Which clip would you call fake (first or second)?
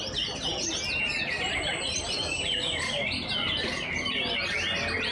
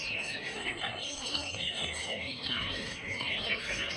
second